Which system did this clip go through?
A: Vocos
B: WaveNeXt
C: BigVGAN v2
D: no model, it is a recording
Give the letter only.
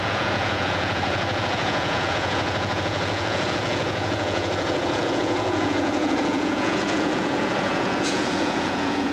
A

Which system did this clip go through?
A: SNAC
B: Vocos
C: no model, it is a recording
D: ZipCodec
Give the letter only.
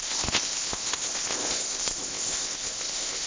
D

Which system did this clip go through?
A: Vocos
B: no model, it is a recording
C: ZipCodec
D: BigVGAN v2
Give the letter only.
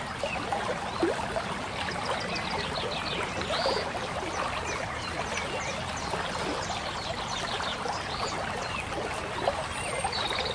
B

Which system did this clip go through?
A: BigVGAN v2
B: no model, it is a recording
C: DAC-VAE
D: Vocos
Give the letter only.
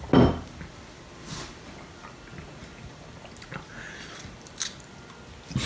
B